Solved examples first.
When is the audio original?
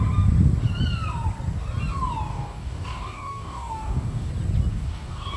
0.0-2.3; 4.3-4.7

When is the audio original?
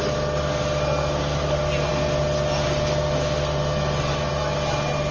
0.0-5.1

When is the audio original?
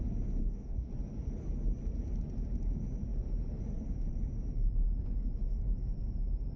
0.0-0.4; 0.9-6.6